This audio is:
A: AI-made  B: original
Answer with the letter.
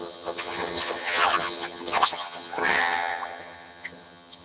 A